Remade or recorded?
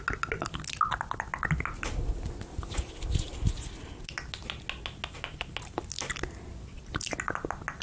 recorded